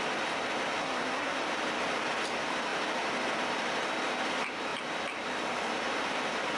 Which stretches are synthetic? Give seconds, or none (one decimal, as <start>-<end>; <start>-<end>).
0.8-1.4